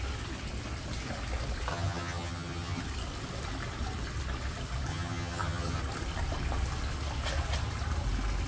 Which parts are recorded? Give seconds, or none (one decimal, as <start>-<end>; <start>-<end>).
0.0-1.7; 2.8-4.9; 5.8-8.5